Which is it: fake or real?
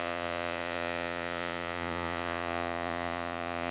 fake